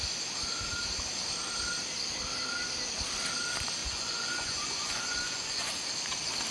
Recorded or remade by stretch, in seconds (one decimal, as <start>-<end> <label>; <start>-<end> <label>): 0.0-3.8 recorded; 3.8-5.8 remade; 5.8-6.5 recorded